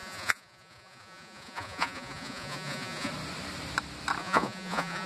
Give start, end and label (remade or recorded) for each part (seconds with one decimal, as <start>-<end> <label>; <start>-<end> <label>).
0.0-3.1 remade; 3.1-4.2 recorded; 4.2-5.1 remade